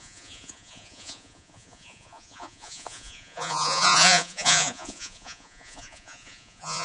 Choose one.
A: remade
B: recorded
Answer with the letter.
A